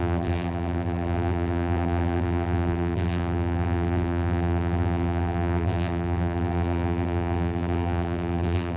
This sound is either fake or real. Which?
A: fake